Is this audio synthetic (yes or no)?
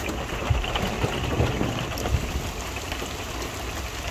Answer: no